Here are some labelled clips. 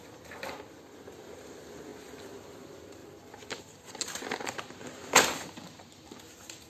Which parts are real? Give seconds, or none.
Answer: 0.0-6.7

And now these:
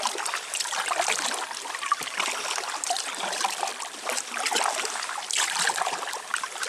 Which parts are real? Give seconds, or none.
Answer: 0.0-6.7

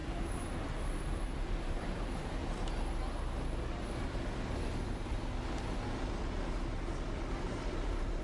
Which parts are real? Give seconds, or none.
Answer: 2.4-7.3